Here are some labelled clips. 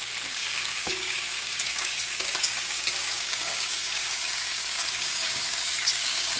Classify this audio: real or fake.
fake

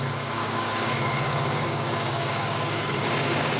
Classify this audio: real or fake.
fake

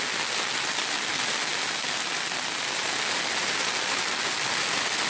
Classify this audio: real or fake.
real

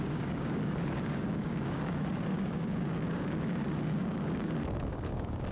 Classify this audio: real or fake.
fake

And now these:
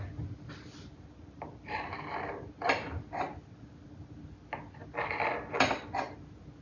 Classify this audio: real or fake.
real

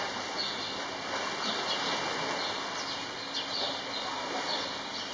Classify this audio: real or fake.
real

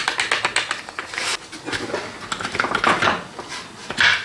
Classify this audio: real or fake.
real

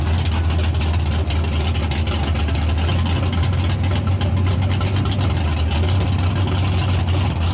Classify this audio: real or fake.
real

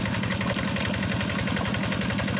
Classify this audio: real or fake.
real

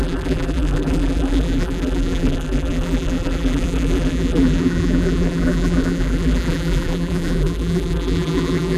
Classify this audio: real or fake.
fake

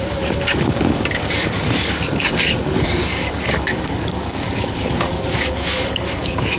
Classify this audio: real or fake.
fake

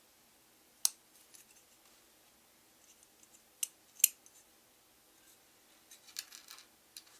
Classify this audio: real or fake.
real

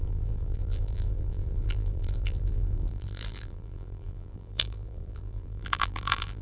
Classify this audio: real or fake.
fake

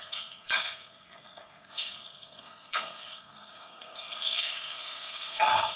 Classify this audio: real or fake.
fake